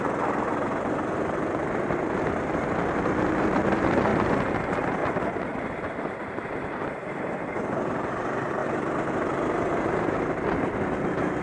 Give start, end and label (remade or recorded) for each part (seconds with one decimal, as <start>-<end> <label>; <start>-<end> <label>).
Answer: 0.0-5.0 remade; 5.0-6.3 recorded; 6.3-8.6 remade; 8.6-9.1 recorded; 9.1-11.4 remade